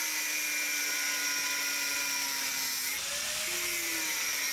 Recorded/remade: recorded